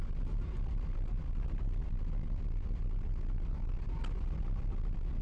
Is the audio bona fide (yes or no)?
yes